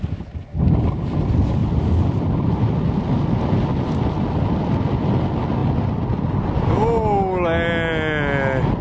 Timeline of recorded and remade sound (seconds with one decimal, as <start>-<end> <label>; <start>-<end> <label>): 0.0-8.8 recorded